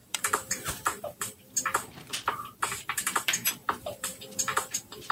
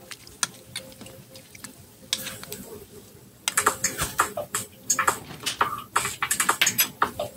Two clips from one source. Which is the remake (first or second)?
first